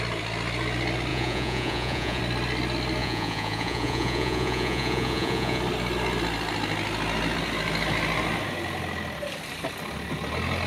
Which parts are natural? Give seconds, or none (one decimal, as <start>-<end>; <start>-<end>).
0.0-1.1; 2.2-3.0; 5.6-10.7